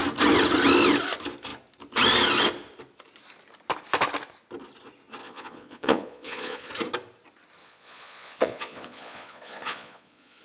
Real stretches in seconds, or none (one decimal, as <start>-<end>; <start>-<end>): 0.0-5.2; 6.7-7.6